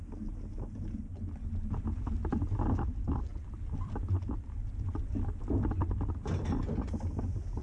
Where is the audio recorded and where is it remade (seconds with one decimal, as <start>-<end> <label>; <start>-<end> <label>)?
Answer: 0.0-7.6 recorded